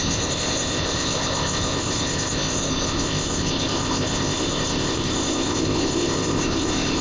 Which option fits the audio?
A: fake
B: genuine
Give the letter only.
A